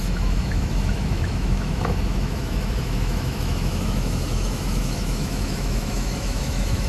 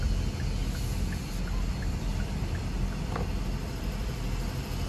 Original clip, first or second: second